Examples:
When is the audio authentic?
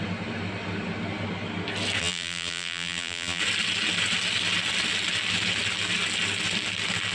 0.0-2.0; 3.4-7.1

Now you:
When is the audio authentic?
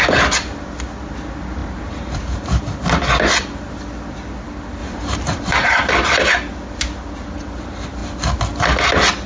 0.0-1.6; 2.6-4.8; 5.9-9.3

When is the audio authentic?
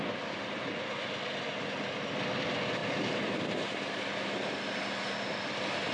0.0-5.9